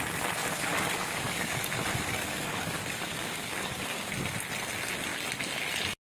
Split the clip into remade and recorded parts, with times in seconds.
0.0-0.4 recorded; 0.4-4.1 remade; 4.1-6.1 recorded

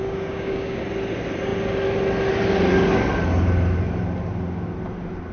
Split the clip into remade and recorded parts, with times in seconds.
0.0-0.8 remade; 0.8-5.3 recorded

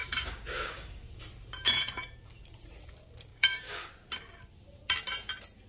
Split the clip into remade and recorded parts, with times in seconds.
0.0-1.1 remade; 1.1-3.3 recorded; 3.3-3.9 remade; 3.9-5.7 recorded

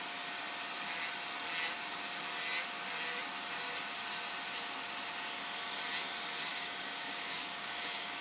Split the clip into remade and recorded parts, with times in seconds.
0.0-6.5 recorded; 6.5-8.2 remade

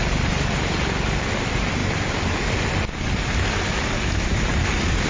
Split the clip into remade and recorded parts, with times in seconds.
0.0-5.1 recorded

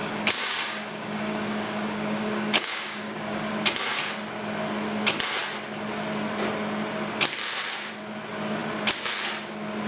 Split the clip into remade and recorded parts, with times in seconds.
0.0-3.5 remade; 3.5-9.9 recorded

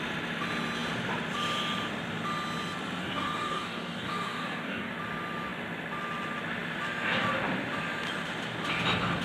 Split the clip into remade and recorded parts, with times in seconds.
0.0-3.0 recorded; 3.0-4.9 remade; 4.9-9.2 recorded